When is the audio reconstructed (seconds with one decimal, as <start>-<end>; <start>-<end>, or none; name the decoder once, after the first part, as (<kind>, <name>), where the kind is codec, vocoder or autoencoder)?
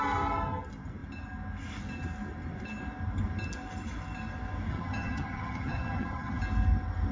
4.7-6.4 (vocoder, HiFi-GAN)